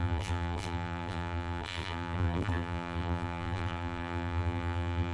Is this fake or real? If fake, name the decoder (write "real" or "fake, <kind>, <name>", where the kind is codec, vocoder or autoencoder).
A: fake, vocoder, BigVGAN v2